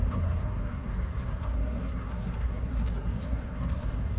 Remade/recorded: remade